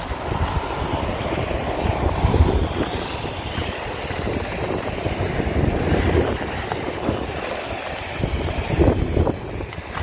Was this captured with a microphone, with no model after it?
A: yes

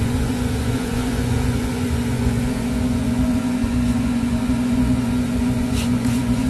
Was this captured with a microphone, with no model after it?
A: no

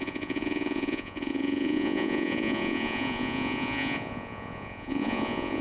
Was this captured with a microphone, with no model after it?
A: no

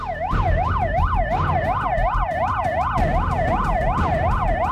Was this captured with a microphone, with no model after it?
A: yes